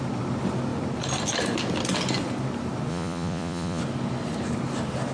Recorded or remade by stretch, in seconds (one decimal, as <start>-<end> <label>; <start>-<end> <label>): 0.0-2.9 recorded; 2.9-3.8 remade; 3.8-5.1 recorded